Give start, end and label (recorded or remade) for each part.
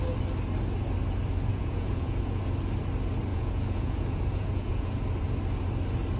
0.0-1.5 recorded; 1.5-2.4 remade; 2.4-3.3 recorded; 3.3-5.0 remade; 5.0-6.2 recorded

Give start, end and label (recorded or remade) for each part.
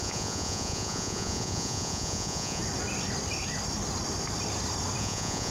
0.0-2.6 remade; 2.6-5.0 recorded; 5.0-5.5 remade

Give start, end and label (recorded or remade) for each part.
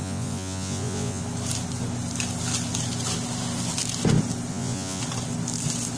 0.0-1.2 remade; 1.2-4.5 recorded; 4.5-5.0 remade; 5.0-6.0 recorded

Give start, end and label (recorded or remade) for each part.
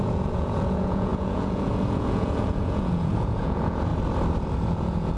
0.0-3.9 remade; 3.9-4.7 recorded; 4.7-5.2 remade